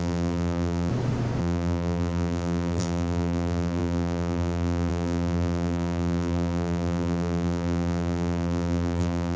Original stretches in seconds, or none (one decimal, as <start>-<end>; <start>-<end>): 0.9-1.4